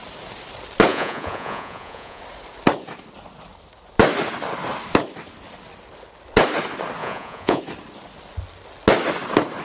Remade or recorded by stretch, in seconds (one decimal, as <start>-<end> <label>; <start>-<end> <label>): 0.0-0.9 recorded; 0.9-2.2 remade; 2.2-7.0 recorded; 7.0-7.6 remade; 7.6-9.6 recorded